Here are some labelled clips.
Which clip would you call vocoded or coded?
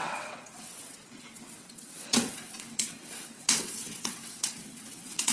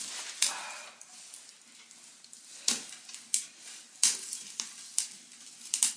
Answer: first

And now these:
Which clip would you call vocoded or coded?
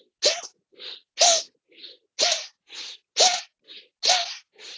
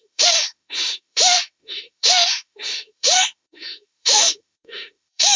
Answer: second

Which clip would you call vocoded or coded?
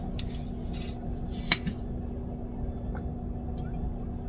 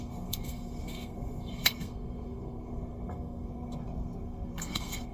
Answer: second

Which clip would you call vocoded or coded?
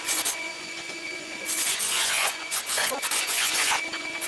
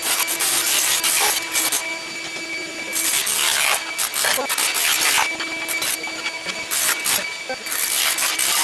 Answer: first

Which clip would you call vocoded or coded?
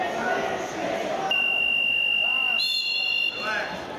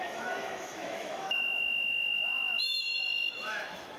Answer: second